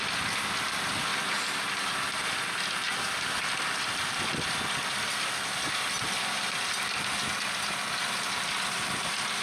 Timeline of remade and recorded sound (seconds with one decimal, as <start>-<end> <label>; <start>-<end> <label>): 0.0-9.4 recorded